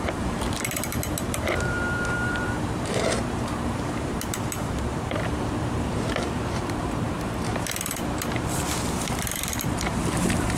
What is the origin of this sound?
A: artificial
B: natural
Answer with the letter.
A